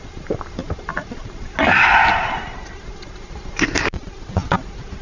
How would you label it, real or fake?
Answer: real